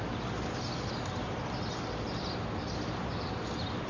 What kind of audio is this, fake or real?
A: real